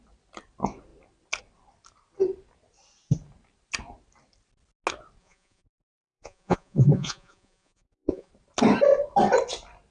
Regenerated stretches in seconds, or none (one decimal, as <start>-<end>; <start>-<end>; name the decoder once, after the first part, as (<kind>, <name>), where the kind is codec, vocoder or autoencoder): 5.2-8.3 (vocoder, Vocos)